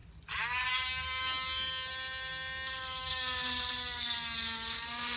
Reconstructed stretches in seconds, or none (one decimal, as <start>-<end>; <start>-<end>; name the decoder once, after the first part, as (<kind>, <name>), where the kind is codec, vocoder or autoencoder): none